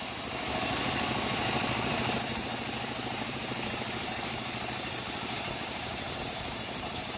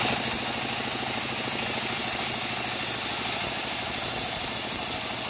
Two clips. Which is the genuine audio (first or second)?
second